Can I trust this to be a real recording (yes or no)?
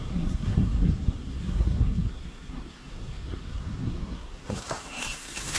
no